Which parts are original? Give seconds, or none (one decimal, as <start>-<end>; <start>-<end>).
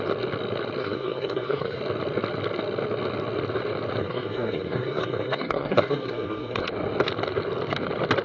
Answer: 0.0-0.8; 1.8-4.0; 6.7-8.2